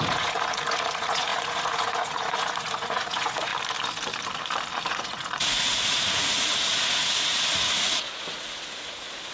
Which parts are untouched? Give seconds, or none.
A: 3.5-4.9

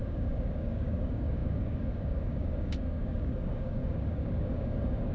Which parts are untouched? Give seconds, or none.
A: none

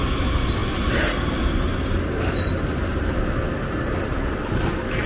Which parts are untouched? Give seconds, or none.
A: 0.0-1.7; 3.3-5.1